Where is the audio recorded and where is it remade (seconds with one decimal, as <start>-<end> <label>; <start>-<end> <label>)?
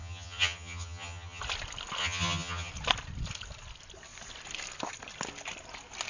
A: 0.0-1.4 remade; 1.4-2.0 recorded; 2.0-2.7 remade; 2.7-6.1 recorded